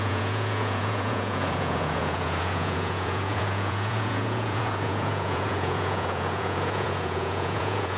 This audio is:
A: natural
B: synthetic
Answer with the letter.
B